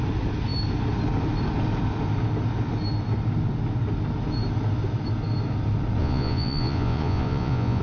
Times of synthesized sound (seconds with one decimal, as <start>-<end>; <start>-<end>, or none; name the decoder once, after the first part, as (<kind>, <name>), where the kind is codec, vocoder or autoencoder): 6.0-7.8 (vocoder, Vocos)